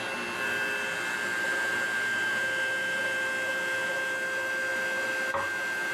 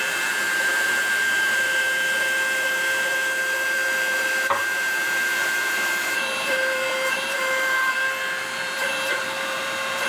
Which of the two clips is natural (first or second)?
first